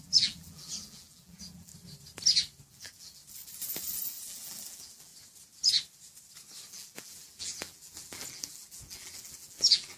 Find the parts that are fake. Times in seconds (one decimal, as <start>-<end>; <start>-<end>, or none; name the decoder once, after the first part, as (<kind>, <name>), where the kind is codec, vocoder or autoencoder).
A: 0.0-1.7 (vocoder, BigVGAN v2); 2.7-3.2; 4.0-5.1; 6.7-10.0